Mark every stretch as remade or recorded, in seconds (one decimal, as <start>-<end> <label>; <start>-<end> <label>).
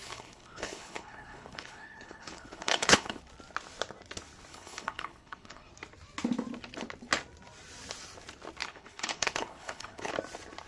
0.0-3.2 remade; 3.2-4.5 recorded; 4.5-5.7 remade; 5.7-8.6 recorded; 8.6-10.1 remade; 10.1-10.7 recorded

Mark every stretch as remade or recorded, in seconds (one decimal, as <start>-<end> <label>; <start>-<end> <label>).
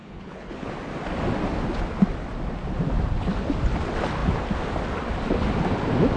0.0-0.7 remade; 0.7-6.2 recorded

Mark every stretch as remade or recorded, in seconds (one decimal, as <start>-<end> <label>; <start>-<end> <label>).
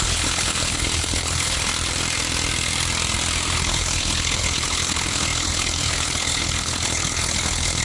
0.0-1.7 remade; 1.7-3.5 recorded; 3.5-7.8 remade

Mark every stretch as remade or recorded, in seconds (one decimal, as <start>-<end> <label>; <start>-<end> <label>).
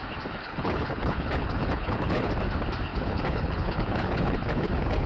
0.0-0.4 recorded; 0.4-2.3 remade; 2.3-2.9 recorded; 2.9-5.1 remade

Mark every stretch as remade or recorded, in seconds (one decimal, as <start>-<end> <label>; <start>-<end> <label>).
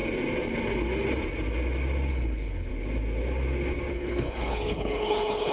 0.0-2.1 recorded; 2.1-2.7 remade; 2.7-3.9 recorded; 3.9-5.5 remade